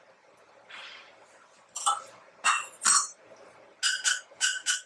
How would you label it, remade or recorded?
recorded